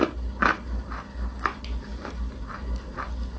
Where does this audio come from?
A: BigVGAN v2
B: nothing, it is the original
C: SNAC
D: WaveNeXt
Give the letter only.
B